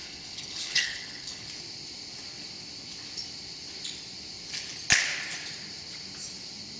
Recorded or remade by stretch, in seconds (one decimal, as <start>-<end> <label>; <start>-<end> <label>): 0.0-1.5 remade; 1.5-6.8 recorded